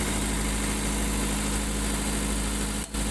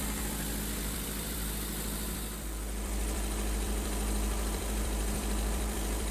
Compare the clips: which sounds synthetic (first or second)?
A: second